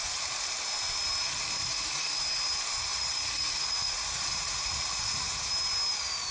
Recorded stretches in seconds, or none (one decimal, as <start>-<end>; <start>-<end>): 0.0-1.6; 2.2-2.9; 5.5-6.3